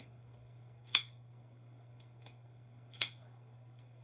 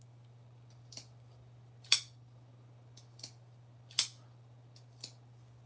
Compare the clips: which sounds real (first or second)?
second